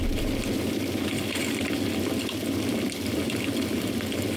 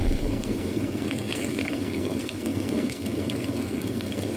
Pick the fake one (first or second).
second